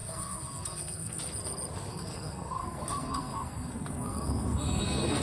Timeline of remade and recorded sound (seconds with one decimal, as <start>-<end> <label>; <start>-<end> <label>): 0.0-1.2 remade; 1.2-1.9 recorded; 1.9-5.2 remade